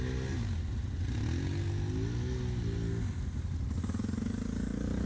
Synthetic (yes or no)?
no